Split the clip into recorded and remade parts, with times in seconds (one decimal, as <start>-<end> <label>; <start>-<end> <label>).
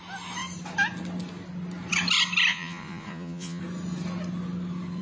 0.0-2.5 recorded; 2.5-3.6 remade; 3.6-5.0 recorded